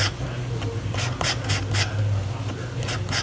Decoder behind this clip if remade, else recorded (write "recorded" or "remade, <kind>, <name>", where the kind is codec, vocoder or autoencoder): recorded